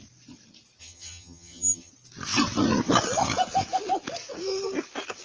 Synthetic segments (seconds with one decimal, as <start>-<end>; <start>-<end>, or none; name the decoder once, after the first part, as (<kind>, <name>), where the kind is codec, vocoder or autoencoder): 0.8-1.9 (vocoder, HiFi-GAN)